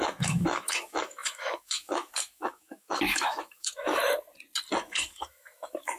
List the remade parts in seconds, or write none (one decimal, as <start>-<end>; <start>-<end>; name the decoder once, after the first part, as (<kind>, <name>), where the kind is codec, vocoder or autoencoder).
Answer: 0.0-4.0 (autoencoder, DAC-VAE); 4.8-6.0